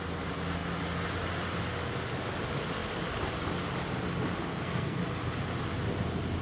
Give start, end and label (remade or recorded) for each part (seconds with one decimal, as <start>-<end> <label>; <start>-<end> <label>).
0.0-4.5 recorded; 4.5-5.0 remade; 5.0-6.4 recorded